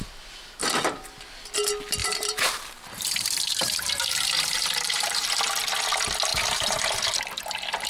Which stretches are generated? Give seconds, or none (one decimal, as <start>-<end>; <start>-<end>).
2.0-5.5; 6.3-7.0